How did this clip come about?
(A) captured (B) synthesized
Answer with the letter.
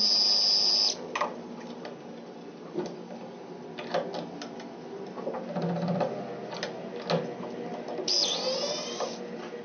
A